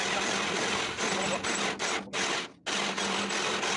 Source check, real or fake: real